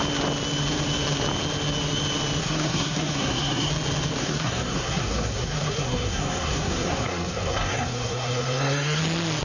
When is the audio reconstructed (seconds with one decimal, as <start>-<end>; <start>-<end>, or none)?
2.4-3.7; 4.2-9.0